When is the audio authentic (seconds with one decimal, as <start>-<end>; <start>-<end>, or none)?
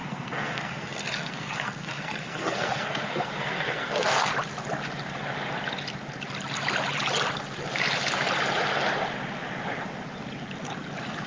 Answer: 4.3-11.3